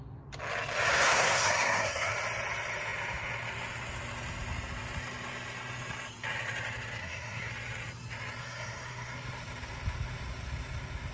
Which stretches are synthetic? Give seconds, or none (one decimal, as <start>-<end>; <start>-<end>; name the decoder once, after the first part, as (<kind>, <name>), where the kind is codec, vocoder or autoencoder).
0.9-2.1 (codec, SNAC); 7.0-7.5; 8.4-9.1

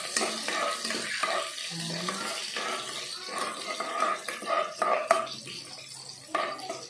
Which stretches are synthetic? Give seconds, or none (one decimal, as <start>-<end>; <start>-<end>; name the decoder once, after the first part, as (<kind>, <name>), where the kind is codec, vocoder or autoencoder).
none

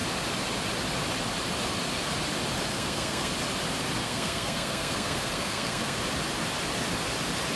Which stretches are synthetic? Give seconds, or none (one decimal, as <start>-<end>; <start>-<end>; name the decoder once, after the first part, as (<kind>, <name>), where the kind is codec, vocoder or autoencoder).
2.7-3.3 (codec, SNAC); 4.0-6.0

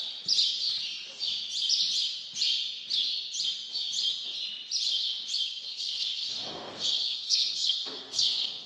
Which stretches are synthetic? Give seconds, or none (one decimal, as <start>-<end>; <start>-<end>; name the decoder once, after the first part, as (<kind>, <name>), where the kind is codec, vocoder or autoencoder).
5.7-8.7 (codec, SNAC)

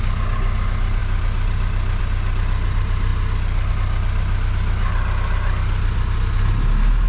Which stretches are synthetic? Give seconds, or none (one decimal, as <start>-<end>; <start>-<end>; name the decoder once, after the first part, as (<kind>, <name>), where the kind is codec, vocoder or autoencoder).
none